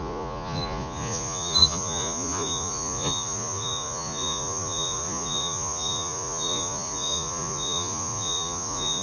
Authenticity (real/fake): fake